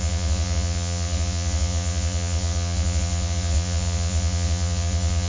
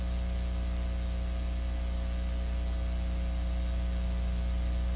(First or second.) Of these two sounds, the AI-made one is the first